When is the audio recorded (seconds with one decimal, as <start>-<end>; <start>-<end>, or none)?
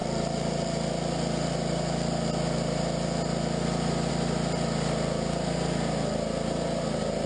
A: 0.0-7.3